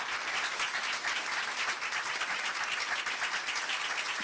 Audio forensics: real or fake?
real